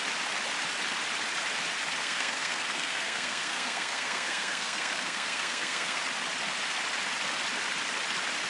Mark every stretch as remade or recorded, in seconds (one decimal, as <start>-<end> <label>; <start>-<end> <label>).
0.0-2.0 recorded; 2.0-6.0 remade; 6.0-8.5 recorded